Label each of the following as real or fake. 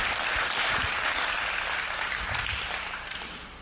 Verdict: real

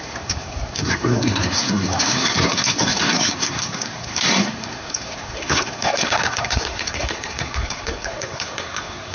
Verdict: fake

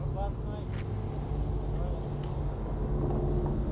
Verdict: real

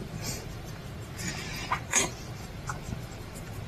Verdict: fake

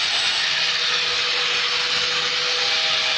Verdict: real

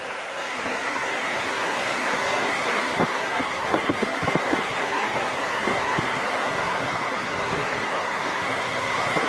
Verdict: fake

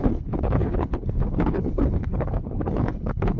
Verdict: fake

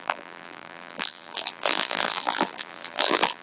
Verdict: fake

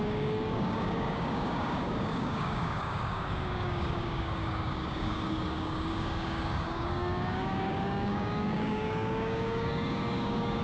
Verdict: fake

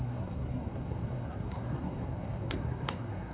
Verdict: fake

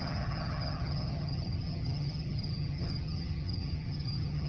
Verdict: fake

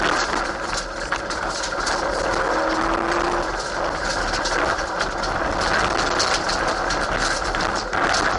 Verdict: real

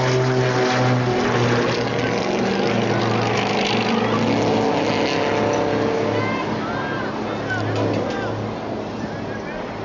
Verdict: real